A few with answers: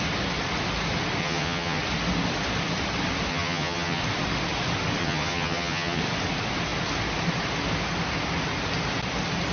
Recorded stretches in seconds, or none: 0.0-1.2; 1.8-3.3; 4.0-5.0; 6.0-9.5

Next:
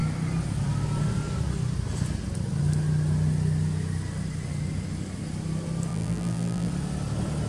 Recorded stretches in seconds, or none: 0.0-5.9; 6.7-7.5

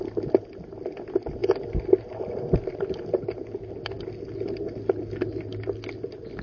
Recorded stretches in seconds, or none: 0.0-6.4

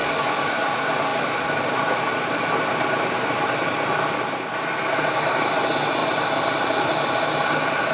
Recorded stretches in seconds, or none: 0.5-7.9

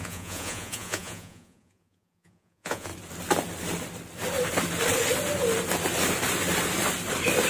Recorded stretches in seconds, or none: 2.9-7.5

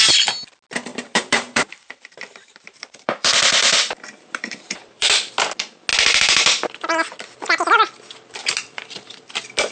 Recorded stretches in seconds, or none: 0.0-0.9; 5.3-9.7